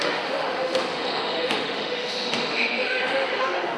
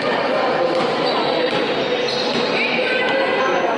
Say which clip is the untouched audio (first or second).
second